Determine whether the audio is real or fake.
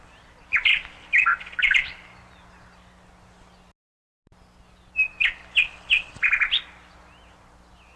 real